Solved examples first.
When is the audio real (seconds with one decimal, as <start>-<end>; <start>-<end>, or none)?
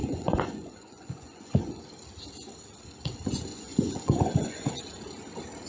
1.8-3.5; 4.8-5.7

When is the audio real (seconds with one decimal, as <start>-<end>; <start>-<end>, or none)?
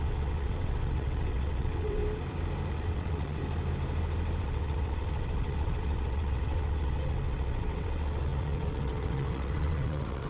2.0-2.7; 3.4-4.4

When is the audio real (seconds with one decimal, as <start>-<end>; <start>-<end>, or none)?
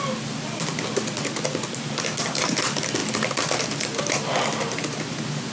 0.0-5.5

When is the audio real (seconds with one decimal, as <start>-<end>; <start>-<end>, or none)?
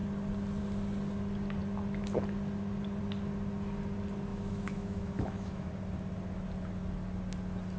0.0-4.3; 5.7-7.8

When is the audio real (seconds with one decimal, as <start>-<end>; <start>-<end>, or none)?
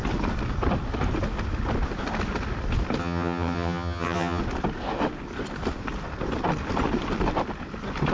0.0-3.0; 4.4-8.1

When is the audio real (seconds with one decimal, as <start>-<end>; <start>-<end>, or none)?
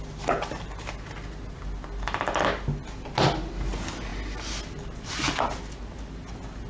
0.0-6.7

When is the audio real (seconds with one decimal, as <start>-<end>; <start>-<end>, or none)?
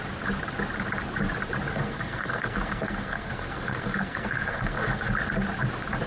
0.0-1.7; 5.1-6.1